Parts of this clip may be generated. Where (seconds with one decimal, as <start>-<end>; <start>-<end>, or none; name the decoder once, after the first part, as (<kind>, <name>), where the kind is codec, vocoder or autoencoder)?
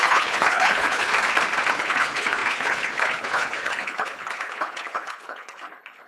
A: 0.0-1.1 (codec, HILCodec); 1.7-6.1